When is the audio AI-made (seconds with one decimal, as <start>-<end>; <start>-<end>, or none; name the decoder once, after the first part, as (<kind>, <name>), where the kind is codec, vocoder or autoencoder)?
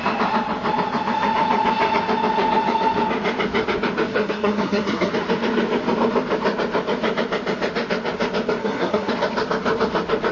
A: 4.1-5.1 (codec, SNAC); 8.6-9.1